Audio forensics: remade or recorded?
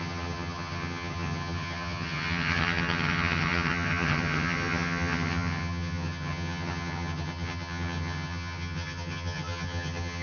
remade